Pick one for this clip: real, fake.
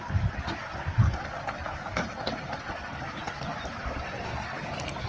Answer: real